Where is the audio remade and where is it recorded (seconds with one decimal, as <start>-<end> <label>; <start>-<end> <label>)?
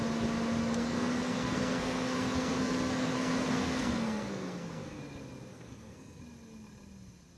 0.0-0.6 recorded; 0.6-5.0 remade; 5.0-5.5 recorded; 5.5-6.2 remade; 6.2-7.4 recorded